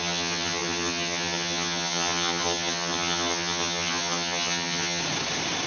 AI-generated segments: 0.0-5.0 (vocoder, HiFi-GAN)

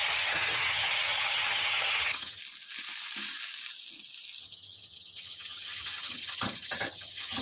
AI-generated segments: 0.0-2.4 (vocoder, HiFi-GAN); 4.4-7.4